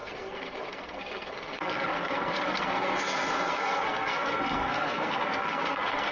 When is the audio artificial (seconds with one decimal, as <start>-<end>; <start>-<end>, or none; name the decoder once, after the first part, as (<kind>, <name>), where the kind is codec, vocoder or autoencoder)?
0.0-6.1 (codec, SNAC)